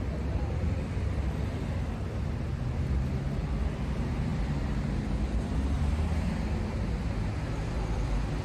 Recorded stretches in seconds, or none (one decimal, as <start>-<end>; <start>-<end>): 0.0-8.4